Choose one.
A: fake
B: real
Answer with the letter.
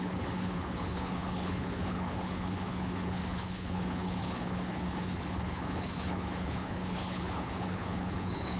A